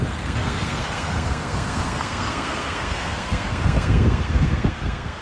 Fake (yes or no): yes